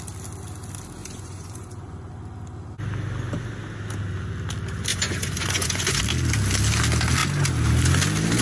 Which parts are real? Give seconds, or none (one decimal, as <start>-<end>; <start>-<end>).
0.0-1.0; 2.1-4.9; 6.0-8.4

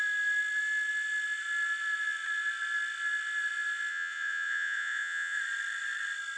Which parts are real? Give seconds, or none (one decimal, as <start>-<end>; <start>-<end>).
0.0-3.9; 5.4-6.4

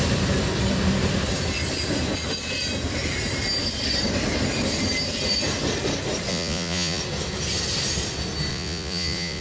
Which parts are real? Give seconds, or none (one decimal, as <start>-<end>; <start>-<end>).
0.0-6.3; 7.0-8.5